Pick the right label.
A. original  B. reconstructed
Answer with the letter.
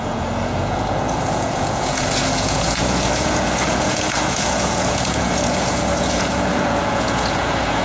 B